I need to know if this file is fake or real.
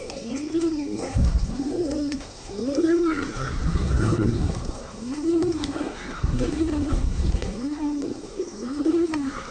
fake